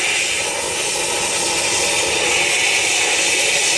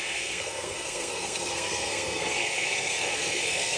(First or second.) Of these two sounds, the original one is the first